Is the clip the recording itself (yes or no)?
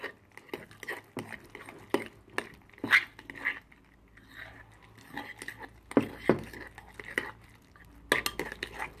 yes